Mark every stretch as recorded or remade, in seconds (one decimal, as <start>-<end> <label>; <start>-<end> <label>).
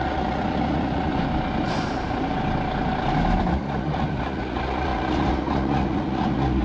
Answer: 0.0-1.1 remade; 1.1-3.5 recorded; 3.5-6.6 remade